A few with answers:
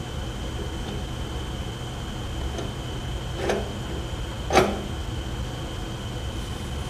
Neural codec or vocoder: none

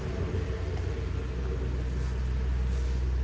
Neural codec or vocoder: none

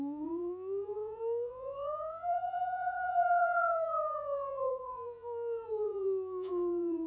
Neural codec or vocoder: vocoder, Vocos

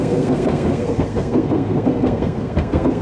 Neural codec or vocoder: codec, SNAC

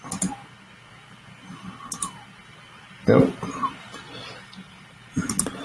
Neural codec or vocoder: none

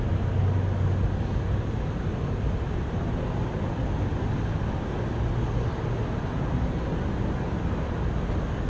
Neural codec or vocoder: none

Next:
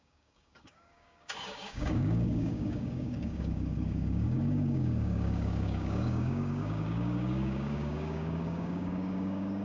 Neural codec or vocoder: codec, DAC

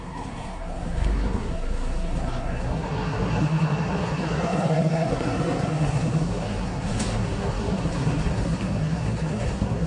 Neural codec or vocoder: codec, SNAC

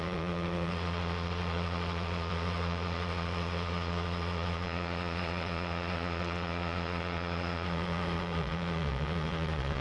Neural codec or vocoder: vocoder, Vocos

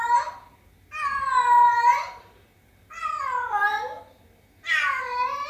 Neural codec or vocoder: none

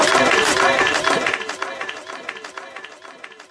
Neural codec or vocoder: none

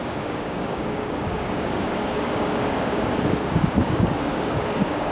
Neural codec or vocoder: codec, DAC